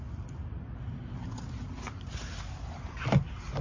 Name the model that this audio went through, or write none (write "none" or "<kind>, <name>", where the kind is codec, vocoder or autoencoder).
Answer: none